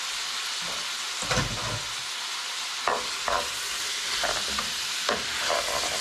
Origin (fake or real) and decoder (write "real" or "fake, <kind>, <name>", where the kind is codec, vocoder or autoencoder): real